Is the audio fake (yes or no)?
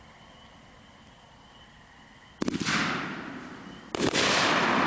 no